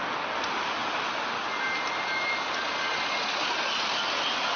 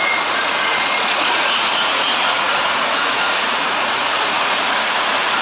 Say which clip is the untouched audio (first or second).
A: first